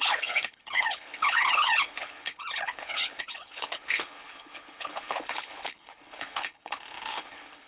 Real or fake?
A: fake